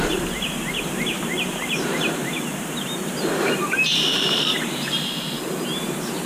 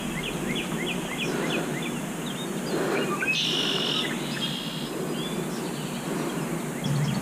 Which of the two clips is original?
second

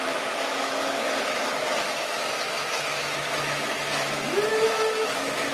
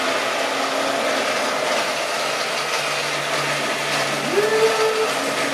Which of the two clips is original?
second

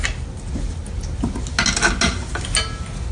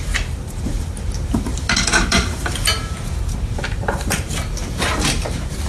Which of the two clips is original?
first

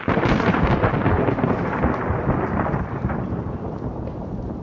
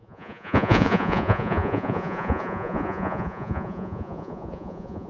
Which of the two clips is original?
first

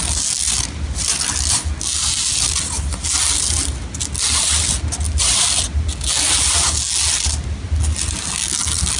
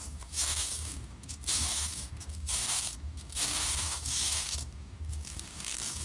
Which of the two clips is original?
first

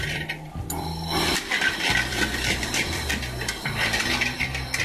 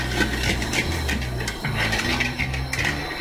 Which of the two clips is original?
second